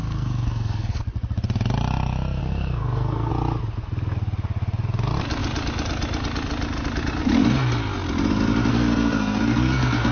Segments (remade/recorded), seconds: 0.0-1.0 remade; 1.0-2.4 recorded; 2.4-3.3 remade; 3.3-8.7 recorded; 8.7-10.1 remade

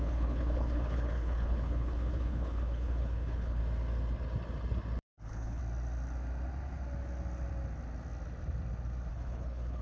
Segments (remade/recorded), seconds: 0.0-3.6 remade; 3.6-5.0 recorded; 5.0-5.6 remade; 5.6-9.1 recorded; 9.1-9.8 remade

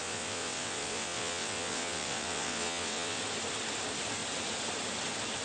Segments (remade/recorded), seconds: 0.0-3.2 remade; 3.2-5.4 recorded